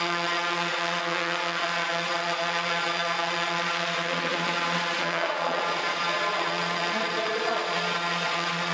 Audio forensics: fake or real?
fake